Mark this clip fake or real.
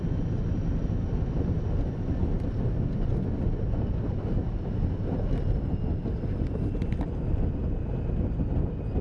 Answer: real